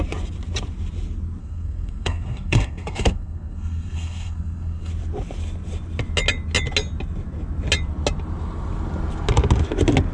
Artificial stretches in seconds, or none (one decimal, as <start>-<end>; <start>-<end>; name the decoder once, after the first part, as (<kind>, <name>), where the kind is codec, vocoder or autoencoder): 1.4-4.9 (codec, SNAC)